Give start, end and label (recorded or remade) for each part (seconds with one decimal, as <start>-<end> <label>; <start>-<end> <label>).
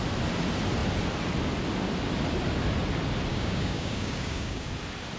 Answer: 0.0-3.3 recorded; 3.3-4.7 remade; 4.7-5.2 recorded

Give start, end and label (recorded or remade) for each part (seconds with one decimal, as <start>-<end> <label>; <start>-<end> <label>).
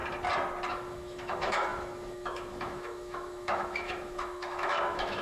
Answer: 0.0-0.7 recorded; 0.7-5.2 remade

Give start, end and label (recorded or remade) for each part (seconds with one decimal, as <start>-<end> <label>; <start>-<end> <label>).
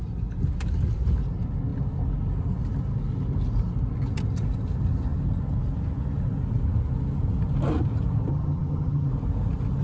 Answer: 0.0-8.3 recorded; 8.3-9.1 remade; 9.1-9.8 recorded